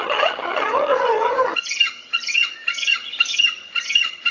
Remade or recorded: remade